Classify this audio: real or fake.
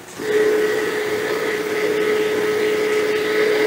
real